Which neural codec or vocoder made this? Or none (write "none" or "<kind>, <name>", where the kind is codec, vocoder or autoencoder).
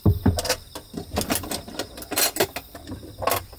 none